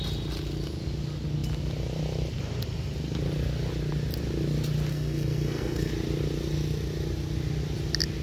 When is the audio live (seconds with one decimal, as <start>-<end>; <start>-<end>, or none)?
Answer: 0.0-4.9; 5.9-8.2